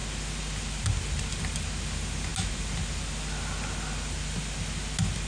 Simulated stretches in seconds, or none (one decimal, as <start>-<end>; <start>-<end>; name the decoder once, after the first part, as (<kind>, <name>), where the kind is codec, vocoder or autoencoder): none